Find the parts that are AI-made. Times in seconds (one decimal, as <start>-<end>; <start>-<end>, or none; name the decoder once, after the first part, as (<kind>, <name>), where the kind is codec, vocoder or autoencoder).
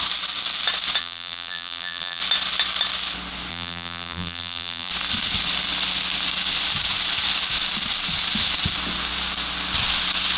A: 1.0-2.2 (vocoder, BigVGAN v2); 3.5-4.9